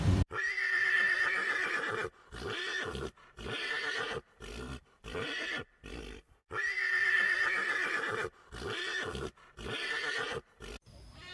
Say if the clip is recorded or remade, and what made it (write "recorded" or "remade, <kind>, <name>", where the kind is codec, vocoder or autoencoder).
remade, vocoder, BigVGAN v2